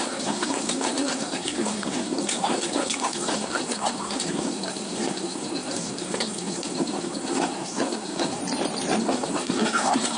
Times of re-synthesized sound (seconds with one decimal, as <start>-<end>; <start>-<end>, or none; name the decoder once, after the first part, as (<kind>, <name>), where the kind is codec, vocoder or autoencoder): 0.0-8.4 (codec, SNAC); 9.0-10.2